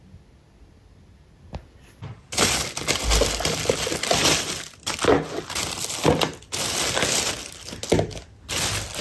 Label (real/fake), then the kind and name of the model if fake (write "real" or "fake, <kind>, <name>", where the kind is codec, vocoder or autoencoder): real